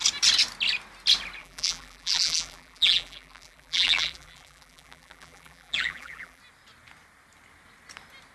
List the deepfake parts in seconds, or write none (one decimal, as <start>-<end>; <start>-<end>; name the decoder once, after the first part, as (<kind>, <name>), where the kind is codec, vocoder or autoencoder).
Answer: 1.4-6.4 (vocoder, BigVGAN v2)